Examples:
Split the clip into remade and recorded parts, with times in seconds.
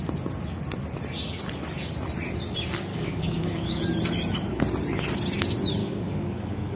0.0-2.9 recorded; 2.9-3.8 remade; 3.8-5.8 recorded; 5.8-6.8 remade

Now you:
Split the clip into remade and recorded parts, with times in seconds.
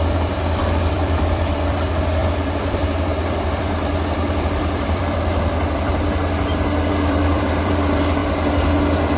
0.0-8.2 remade; 8.2-9.2 recorded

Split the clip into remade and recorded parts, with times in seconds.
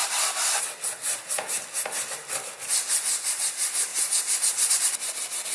0.0-5.5 recorded